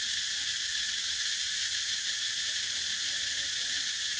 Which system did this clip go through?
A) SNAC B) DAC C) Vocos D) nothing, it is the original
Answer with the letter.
D